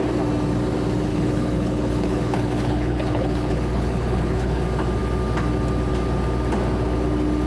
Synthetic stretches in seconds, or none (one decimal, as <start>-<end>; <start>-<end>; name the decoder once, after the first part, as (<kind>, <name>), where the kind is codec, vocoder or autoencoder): 1.1-4.6 (codec, HILCodec)